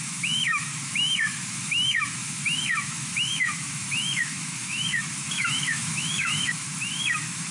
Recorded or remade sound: remade